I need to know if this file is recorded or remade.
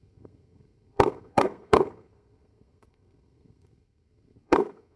remade